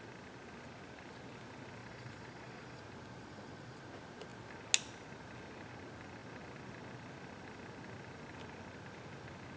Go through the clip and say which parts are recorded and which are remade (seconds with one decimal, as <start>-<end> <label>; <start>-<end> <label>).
0.0-1.8 recorded; 1.8-2.8 remade; 2.8-3.2 recorded; 3.2-3.8 remade; 3.8-9.6 recorded